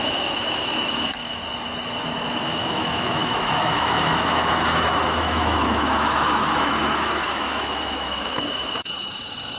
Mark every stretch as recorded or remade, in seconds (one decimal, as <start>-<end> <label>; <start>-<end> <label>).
0.0-1.4 remade; 1.4-2.3 recorded; 2.3-9.6 remade